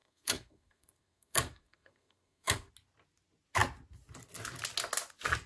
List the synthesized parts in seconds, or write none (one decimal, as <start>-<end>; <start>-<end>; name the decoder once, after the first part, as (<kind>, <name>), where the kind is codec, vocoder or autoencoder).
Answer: 0.0-2.7 (codec, SNAC)

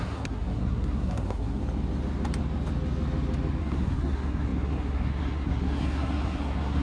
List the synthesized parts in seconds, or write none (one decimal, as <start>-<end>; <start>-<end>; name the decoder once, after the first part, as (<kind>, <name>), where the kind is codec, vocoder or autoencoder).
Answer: 0.0-1.6 (codec, SNAC); 3.6-6.8

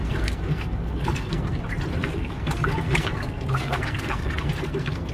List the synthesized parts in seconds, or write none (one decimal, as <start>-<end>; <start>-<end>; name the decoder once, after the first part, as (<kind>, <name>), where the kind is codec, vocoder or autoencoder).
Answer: 0.0-1.6 (codec, SNAC); 2.0-5.1

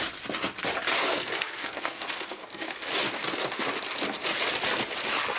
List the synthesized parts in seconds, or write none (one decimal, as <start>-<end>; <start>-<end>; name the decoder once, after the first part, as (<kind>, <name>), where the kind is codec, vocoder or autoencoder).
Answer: 1.0-2.9 (codec, SNAC)

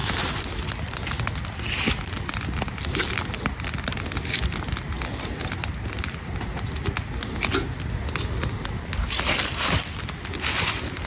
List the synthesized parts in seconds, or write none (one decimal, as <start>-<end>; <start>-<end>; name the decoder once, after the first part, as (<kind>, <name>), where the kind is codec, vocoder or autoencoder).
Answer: none

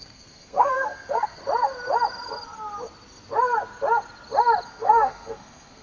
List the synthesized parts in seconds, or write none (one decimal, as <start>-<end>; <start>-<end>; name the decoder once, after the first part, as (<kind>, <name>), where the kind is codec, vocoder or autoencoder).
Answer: 0.0-1.4 (codec, SNAC); 4.7-5.8

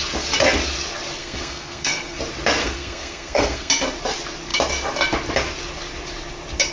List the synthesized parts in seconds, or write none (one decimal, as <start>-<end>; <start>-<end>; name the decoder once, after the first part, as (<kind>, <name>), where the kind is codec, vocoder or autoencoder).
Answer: 1.2-2.2 (codec, SNAC); 2.6-3.7